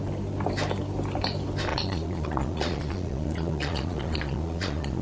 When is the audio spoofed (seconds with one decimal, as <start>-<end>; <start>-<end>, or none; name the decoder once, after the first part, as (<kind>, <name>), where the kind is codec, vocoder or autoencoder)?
1.7-5.0 (vocoder, Vocos)

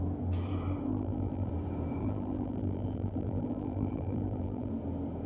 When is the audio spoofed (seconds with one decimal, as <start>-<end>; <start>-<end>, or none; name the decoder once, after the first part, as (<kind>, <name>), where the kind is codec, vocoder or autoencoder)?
0.9-1.5 (vocoder, BigVGAN v2); 2.0-4.7

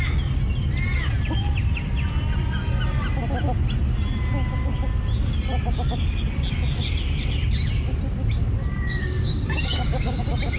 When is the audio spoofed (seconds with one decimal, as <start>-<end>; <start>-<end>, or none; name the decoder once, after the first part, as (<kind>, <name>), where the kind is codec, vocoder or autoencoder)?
8.7-10.2 (codec, DAC)

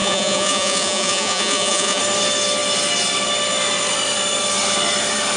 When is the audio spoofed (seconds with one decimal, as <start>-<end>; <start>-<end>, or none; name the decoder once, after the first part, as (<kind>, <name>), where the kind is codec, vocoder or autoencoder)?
0.0-2.0 (vocoder, Vocos)

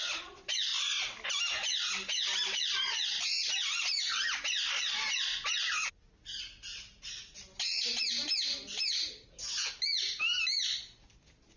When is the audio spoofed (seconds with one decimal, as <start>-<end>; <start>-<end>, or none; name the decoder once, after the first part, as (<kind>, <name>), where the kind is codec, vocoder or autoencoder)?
none